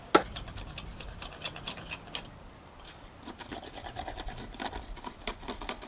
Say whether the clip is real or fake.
real